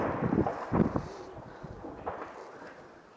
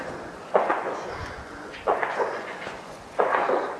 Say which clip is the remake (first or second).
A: second